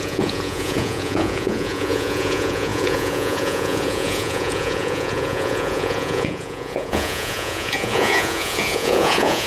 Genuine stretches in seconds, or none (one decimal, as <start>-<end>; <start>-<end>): none